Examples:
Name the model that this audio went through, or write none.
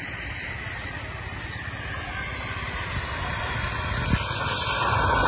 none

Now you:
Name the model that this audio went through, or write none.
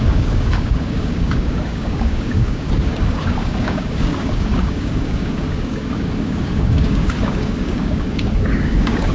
codec, DAC